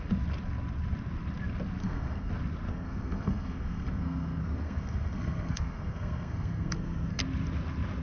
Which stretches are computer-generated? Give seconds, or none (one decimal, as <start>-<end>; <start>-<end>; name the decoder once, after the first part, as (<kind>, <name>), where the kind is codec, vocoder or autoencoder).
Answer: 1.8-2.3 (codec, SNAC); 2.7-7.2